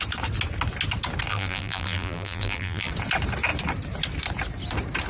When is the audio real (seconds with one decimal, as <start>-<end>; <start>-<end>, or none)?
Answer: 0.0-1.3; 2.9-5.1